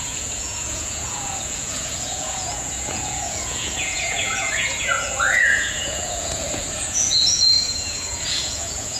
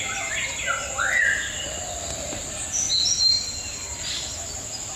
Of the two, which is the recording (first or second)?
second